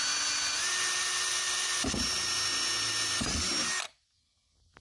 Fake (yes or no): no